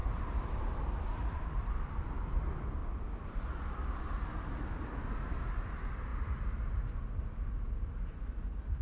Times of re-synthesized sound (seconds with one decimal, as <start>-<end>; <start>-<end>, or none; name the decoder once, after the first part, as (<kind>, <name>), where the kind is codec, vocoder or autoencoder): 0.0-1.8 (vocoder, BigVGAN v2); 2.8-3.4